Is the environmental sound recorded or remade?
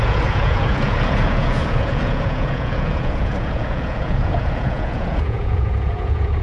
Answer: remade